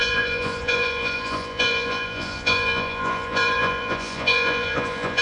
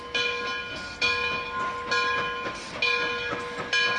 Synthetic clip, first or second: first